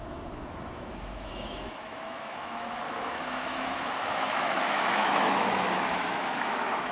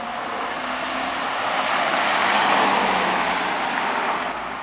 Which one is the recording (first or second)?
second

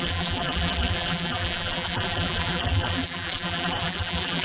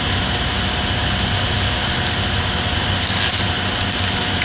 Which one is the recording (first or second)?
second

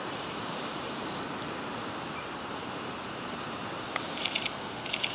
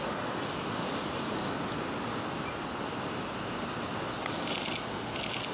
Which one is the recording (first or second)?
second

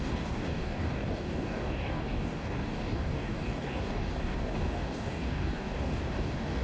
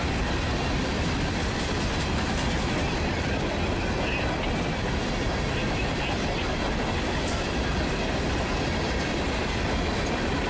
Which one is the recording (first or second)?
second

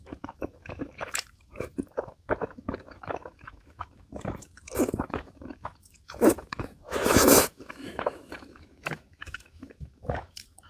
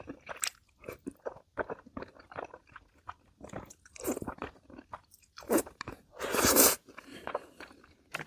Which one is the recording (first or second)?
second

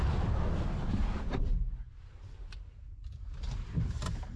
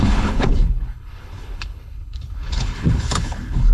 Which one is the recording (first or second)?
first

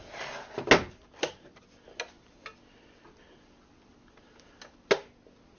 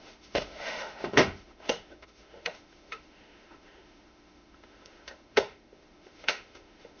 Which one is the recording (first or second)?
first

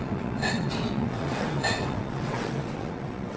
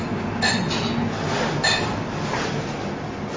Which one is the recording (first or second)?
second